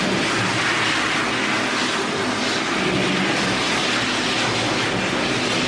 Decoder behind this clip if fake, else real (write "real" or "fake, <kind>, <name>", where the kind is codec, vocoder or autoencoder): real